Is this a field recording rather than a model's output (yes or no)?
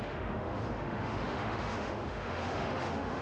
no